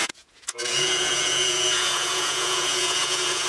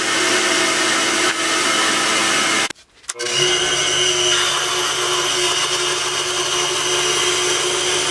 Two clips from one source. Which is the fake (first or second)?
first